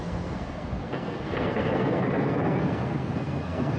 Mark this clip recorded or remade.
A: remade